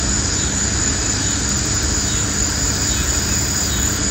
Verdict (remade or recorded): recorded